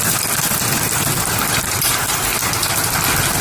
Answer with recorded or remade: remade